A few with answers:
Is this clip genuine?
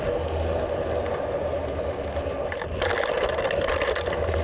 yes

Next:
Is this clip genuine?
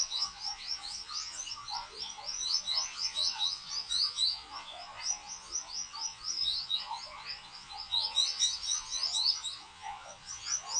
no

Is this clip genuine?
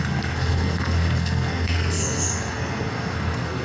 no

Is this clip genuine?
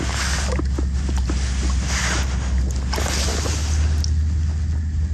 yes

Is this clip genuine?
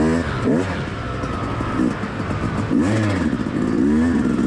yes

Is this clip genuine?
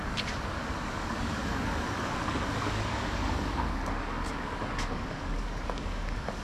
no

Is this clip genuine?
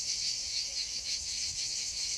no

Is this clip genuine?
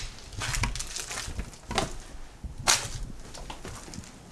yes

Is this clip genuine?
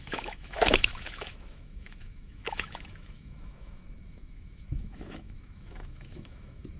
no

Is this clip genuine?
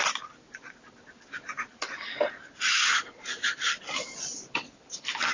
yes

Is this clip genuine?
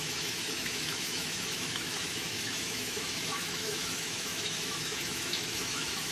no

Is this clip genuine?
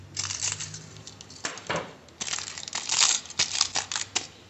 yes